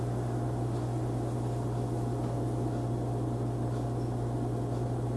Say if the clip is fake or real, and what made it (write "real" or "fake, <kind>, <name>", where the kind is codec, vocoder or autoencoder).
real